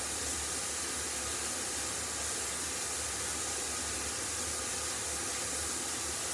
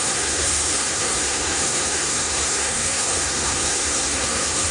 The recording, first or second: first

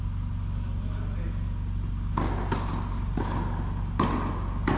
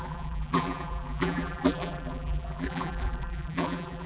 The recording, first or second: first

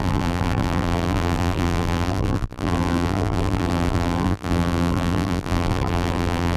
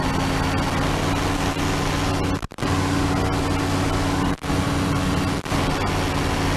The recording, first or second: second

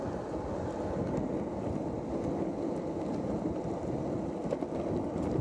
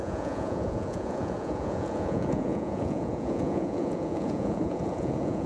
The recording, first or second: first